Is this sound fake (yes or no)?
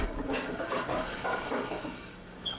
yes